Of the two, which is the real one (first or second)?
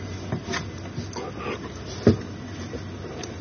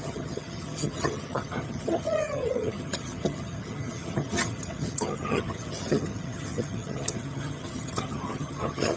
first